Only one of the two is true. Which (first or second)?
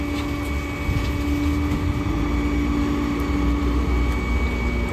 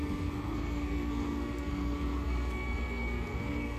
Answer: first